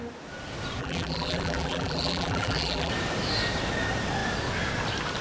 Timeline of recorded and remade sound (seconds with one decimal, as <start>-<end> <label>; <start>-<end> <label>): 0.0-0.8 recorded; 0.8-2.9 remade; 2.9-5.2 recorded